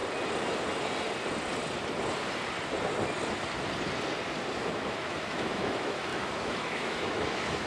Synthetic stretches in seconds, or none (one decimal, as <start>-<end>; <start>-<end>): 4.6-7.7